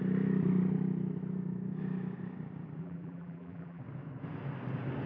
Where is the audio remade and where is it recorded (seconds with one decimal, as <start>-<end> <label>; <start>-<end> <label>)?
0.0-2.8 recorded; 2.8-3.8 remade; 3.8-5.1 recorded